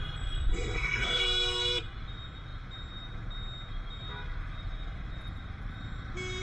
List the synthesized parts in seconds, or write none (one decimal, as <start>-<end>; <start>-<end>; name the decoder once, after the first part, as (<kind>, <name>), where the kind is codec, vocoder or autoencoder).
0.5-1.2 (codec, SNAC)